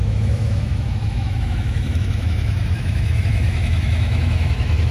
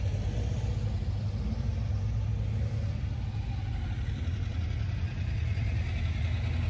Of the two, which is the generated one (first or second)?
first